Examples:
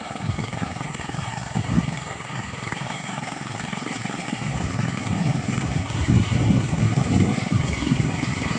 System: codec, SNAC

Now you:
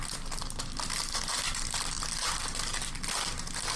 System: none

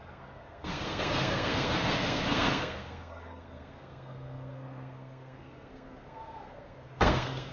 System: codec, SNAC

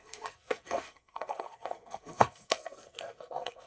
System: codec, SNAC